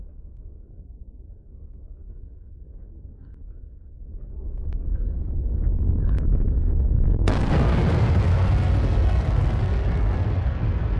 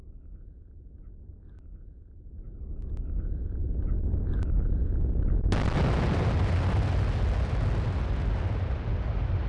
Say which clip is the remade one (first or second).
first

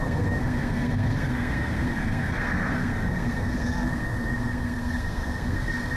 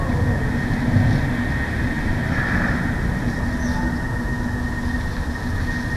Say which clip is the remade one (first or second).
first